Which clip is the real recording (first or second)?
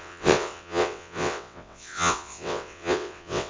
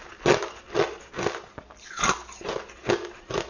second